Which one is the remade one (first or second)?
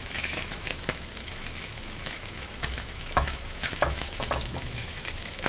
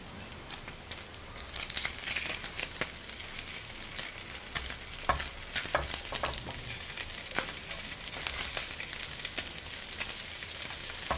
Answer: first